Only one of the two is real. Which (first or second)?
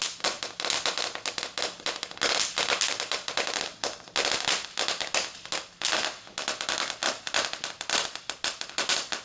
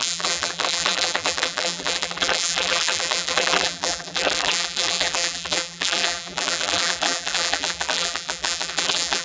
first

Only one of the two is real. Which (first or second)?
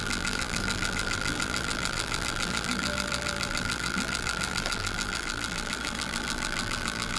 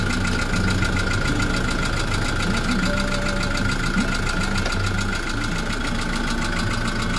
second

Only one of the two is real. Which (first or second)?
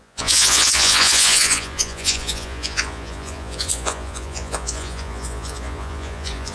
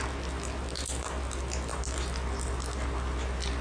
second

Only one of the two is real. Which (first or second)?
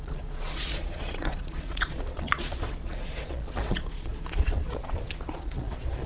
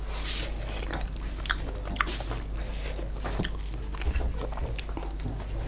second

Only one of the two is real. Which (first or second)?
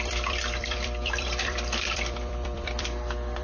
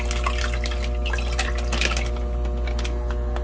second